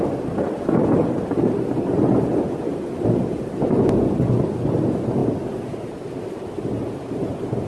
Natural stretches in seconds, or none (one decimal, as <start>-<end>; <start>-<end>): 0.0-7.7